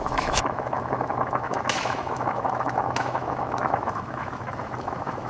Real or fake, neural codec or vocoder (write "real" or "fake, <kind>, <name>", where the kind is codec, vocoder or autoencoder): fake, autoencoder, DAC-VAE